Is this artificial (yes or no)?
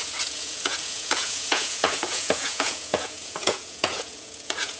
yes